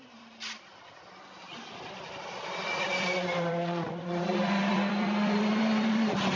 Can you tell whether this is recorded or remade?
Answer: remade